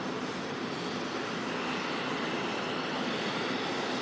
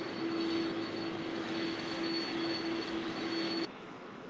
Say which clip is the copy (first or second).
second